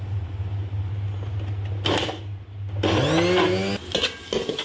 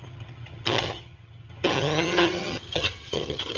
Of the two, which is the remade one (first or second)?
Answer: second